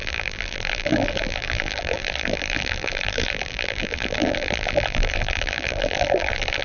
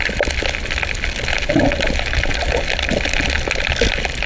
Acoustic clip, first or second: second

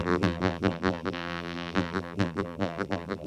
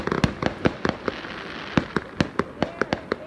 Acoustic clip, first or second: second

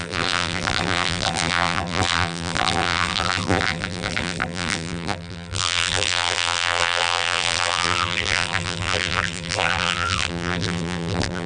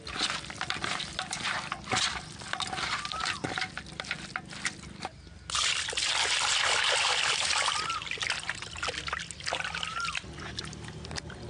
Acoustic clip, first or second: second